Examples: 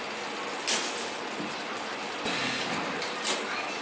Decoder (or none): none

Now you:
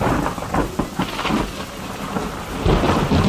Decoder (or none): none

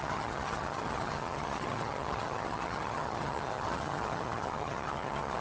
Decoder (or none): vocoder, HiFi-GAN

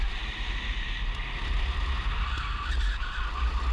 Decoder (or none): none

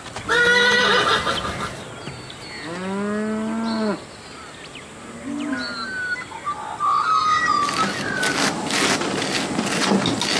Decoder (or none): none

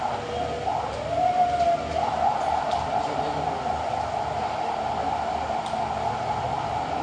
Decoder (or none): none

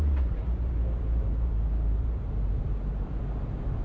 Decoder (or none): vocoder, BigVGAN v2